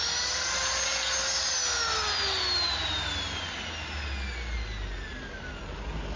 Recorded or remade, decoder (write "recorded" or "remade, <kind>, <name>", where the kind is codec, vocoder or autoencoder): recorded